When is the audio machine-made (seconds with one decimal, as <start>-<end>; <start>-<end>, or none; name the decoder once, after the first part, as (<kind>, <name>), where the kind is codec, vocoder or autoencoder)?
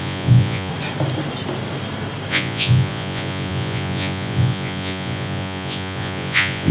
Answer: 0.0-0.7 (vocoder, Vocos); 2.3-6.7